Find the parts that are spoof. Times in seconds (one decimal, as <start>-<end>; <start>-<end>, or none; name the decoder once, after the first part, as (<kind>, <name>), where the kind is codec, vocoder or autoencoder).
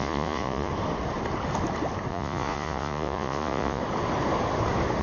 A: 0.0-0.7 (vocoder, Vocos); 2.1-3.8